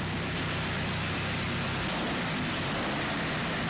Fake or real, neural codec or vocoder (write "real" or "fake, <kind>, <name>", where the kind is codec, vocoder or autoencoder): real